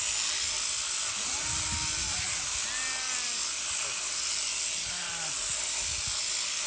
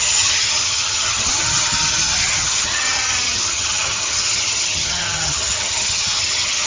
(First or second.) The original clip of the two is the first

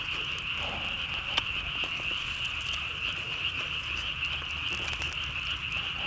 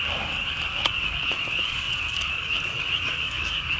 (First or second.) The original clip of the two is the first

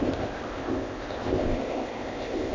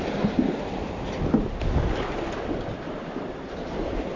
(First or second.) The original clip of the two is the second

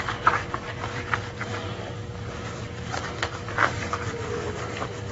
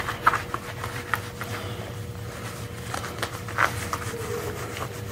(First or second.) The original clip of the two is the second